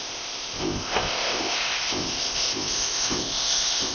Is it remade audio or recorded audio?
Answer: remade